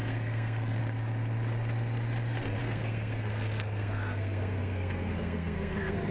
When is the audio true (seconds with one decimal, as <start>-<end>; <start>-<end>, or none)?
0.8-2.6